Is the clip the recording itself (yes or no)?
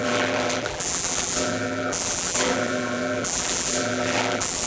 no